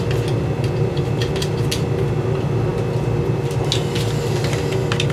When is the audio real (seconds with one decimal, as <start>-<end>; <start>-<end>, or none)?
0.0-5.1

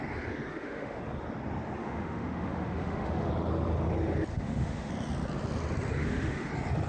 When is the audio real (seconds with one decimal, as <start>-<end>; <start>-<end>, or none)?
0.0-0.5; 1.0-1.8; 3.3-4.3; 4.9-6.0; 6.5-6.9

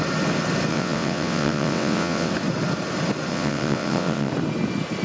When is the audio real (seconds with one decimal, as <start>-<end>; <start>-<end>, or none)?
0.0-0.7; 2.3-3.3; 4.3-5.0

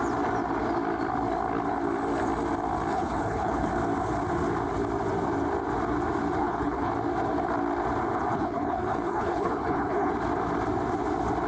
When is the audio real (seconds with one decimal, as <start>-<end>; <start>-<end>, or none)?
0.0-2.9; 3.7-6.4; 6.9-8.3; 10.1-11.5

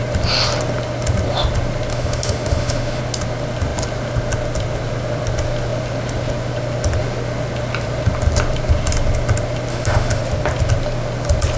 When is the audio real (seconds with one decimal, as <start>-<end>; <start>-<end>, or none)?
0.0-1.9; 3.0-9.7; 10.2-11.6

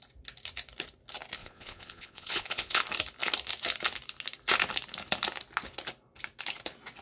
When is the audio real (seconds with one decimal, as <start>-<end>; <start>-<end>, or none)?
0.0-1.4; 2.8-7.0

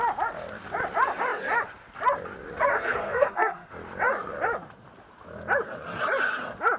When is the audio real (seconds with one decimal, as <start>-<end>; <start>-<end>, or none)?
0.0-2.7; 3.7-6.8